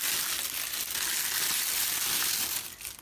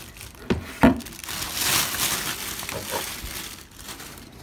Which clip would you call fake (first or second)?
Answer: second